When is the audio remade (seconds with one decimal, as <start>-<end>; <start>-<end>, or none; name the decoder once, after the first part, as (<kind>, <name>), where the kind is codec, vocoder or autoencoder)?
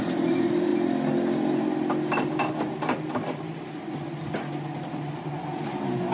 none